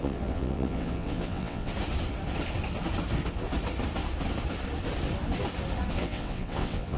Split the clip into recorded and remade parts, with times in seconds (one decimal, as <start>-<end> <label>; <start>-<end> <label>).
0.0-1.7 remade; 1.7-5.9 recorded; 5.9-7.0 remade